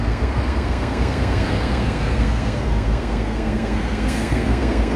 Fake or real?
fake